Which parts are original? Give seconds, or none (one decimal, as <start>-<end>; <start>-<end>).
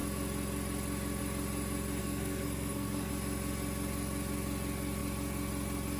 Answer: 0.0-2.0; 3.1-6.0